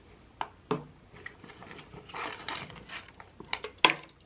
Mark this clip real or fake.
real